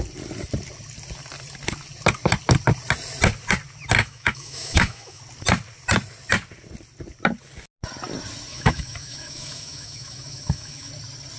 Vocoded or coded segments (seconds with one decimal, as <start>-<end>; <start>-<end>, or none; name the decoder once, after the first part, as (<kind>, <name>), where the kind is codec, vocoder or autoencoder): 4.0-5.2 (autoencoder, DAC-VAE); 8.5-10.9